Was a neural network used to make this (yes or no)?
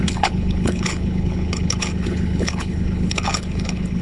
yes